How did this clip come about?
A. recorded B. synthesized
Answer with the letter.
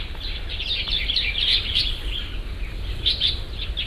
A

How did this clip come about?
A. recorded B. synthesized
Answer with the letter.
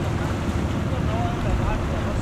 A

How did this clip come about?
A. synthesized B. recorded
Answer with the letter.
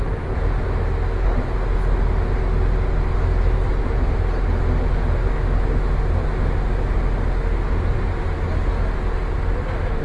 B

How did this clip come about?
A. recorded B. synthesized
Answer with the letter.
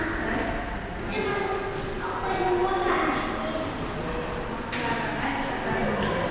A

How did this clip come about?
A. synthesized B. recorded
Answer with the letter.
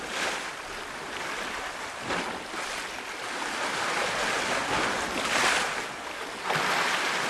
B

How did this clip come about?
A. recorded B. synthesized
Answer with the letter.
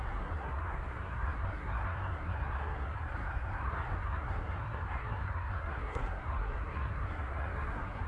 B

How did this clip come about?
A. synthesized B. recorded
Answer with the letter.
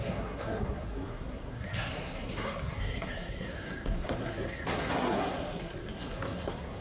A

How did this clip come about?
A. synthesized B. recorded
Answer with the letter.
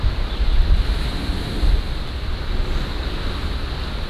B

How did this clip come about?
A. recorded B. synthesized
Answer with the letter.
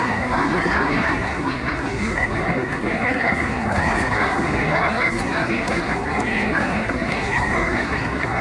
B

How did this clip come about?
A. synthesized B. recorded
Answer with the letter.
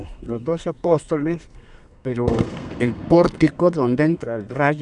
A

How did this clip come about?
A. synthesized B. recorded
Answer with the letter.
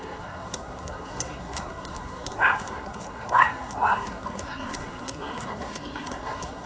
A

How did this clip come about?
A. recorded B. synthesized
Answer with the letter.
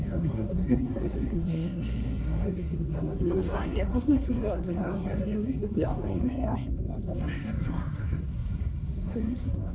B